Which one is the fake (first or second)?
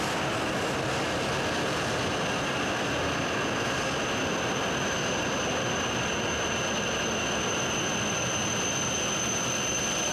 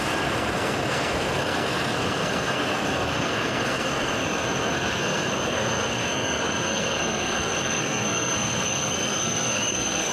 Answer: second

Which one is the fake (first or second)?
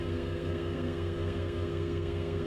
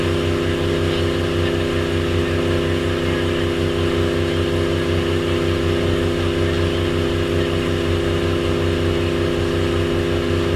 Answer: first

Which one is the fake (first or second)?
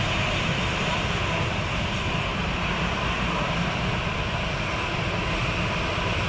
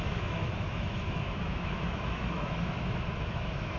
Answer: second